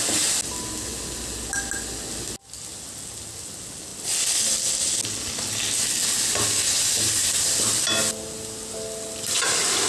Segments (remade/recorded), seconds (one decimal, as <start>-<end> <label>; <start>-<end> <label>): 0.0-9.9 recorded